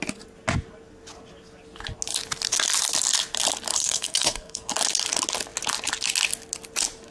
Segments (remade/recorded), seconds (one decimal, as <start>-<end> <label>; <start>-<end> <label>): 0.0-3.8 recorded; 3.8-4.7 remade; 4.7-7.1 recorded